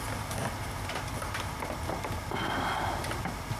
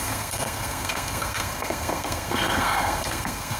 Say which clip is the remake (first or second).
second